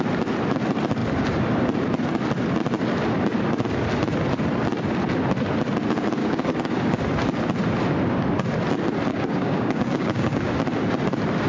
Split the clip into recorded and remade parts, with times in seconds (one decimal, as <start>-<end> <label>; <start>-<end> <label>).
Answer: 0.0-6.2 recorded; 6.2-7.0 remade; 7.0-9.1 recorded; 9.1-10.5 remade; 10.5-11.5 recorded